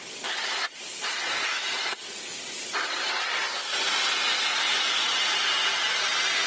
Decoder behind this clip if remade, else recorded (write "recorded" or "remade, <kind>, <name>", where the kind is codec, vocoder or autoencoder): recorded